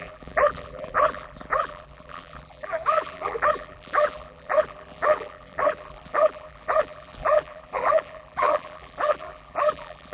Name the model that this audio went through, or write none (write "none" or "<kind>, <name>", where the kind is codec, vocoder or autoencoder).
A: vocoder, BigVGAN v2